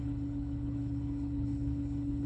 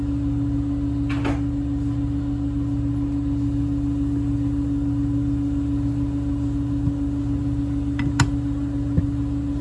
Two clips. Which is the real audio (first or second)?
second